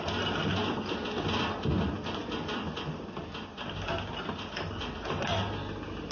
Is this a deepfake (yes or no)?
no